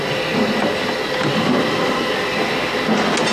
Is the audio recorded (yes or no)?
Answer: yes